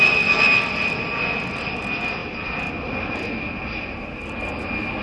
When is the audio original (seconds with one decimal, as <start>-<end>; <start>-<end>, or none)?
0.0-5.0